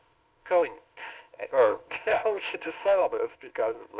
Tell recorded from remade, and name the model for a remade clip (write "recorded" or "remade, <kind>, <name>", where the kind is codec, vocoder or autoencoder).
remade, codec, ZipCodec